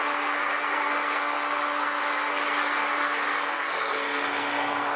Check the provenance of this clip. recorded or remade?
remade